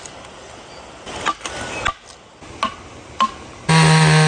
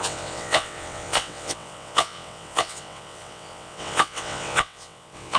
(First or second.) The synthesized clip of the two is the second